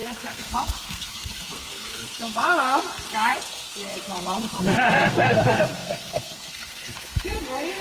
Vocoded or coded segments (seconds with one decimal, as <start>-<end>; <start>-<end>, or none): 0.0-7.8